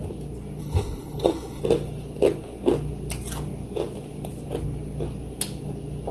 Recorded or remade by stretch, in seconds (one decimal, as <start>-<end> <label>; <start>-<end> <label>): 0.0-0.6 recorded; 0.6-1.6 remade; 1.6-6.1 recorded